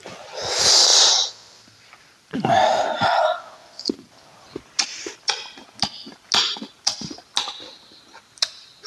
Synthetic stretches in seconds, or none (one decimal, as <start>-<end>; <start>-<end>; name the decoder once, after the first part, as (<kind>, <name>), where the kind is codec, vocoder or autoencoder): 0.9-3.7 (vocoder, BigVGAN v2)

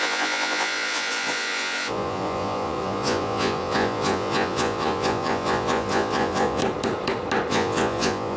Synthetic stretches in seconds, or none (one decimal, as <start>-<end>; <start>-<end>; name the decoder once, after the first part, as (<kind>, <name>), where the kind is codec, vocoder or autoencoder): 0.0-6.6 (vocoder, Vocos); 7.5-8.4

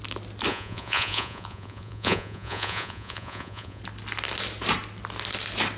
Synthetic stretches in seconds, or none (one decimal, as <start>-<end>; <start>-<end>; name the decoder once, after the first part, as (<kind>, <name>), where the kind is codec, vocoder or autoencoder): 0.5-3.8 (vocoder, Vocos)

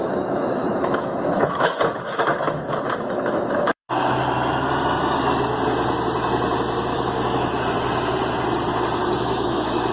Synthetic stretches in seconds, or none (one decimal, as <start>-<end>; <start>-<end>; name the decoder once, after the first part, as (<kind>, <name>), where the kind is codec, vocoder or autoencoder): 0.0-4.2 (autoencoder, DAC-VAE); 6.9-7.6; 9.0-9.9

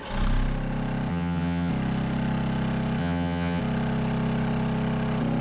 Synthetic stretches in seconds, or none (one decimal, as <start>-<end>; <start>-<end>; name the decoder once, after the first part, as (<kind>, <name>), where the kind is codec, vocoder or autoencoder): 1.1-1.7 (vocoder, HiFi-GAN); 3.0-3.6

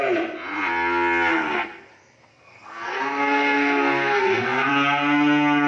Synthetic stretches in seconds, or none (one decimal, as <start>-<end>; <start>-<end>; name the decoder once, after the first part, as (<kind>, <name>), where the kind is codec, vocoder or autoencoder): 1.3-1.9 (codec, SNAC); 2.3-4.7